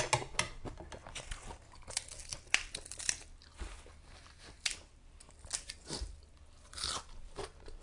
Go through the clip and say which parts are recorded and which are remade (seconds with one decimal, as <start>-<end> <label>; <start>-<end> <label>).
0.0-7.8 recorded